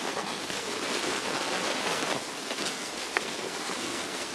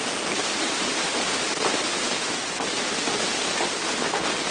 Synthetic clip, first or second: first